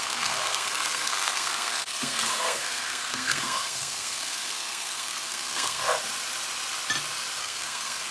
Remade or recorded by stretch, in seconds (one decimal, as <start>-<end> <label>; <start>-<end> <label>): 0.0-5.8 remade; 5.8-7.4 recorded; 7.4-8.1 remade

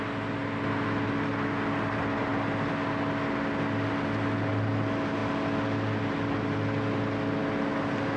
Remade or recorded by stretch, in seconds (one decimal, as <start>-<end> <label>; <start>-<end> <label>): 0.0-8.2 recorded

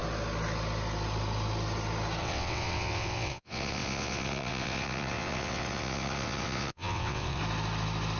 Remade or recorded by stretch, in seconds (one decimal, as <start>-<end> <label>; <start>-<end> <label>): 0.0-2.2 recorded; 2.2-7.4 remade; 7.4-8.2 recorded

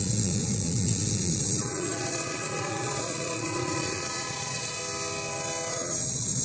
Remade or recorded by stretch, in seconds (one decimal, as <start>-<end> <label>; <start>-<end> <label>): 0.0-4.8 remade; 4.8-5.7 recorded; 5.7-6.4 remade

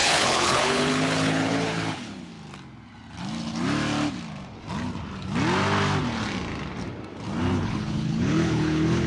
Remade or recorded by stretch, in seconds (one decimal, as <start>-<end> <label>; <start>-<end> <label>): 0.0-2.3 remade; 2.3-7.5 recorded; 7.5-9.1 remade

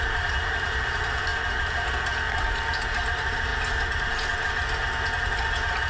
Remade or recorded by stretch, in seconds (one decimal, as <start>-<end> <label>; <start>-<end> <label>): 0.0-1.3 remade; 1.3-2.4 recorded; 2.4-3.5 remade; 3.5-5.9 recorded

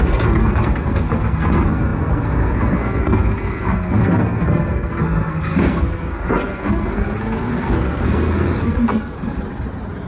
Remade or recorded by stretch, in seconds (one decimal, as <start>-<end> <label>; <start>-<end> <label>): 0.0-9.3 remade; 9.3-10.1 recorded

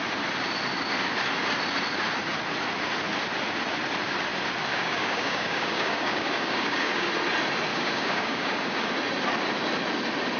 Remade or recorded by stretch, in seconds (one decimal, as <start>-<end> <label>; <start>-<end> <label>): 0.0-4.7 recorded; 4.7-7.1 remade; 7.1-7.7 recorded; 7.7-8.9 remade; 8.9-10.4 recorded